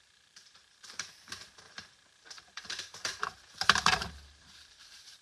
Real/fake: fake